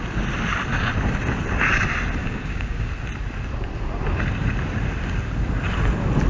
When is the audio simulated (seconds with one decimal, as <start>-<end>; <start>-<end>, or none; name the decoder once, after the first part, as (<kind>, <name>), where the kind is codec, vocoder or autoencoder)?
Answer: 2.2-2.9 (codec, DAC)